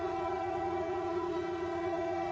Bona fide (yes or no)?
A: no